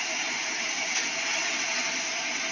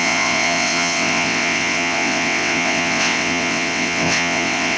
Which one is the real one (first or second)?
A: first